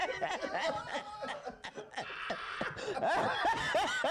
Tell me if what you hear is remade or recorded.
recorded